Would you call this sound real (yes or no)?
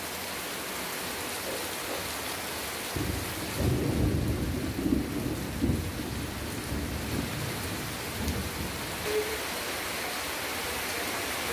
yes